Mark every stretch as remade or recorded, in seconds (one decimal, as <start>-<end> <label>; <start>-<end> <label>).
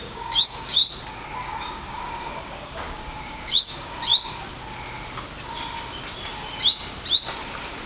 0.0-0.8 remade; 0.8-1.4 recorded; 1.4-4.1 remade; 4.1-7.9 recorded